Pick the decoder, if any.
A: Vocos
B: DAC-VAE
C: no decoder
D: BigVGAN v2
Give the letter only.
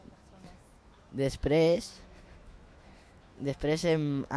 B